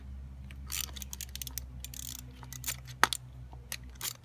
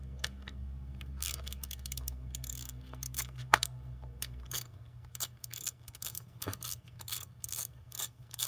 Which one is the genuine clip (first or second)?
first